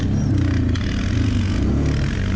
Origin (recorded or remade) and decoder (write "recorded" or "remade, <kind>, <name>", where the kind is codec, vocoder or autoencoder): recorded